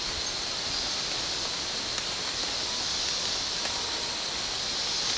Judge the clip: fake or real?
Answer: real